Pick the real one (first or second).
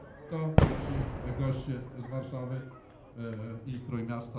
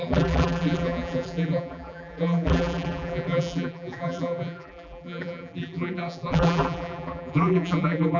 first